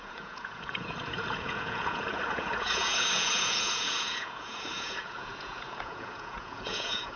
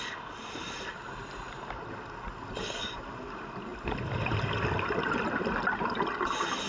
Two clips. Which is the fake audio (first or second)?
first